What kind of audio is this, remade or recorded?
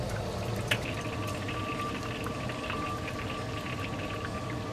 recorded